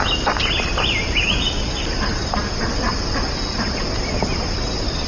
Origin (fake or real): real